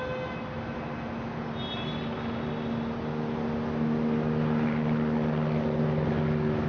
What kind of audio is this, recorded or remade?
recorded